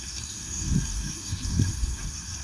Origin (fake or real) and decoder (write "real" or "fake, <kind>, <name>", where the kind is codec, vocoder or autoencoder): fake, codec, SNAC